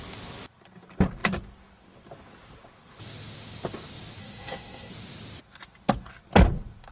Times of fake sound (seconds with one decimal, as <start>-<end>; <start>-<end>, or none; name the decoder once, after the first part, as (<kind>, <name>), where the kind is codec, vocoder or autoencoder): 4.2-4.9 (codec, SNAC)